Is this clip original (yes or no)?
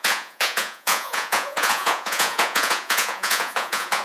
no